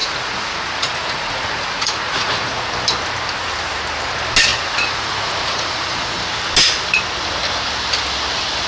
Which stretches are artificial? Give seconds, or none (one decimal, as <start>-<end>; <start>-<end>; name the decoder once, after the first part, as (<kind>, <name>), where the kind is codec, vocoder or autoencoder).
0.0-2.7 (vocoder, Vocos); 4.5-6.2